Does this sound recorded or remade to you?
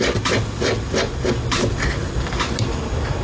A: recorded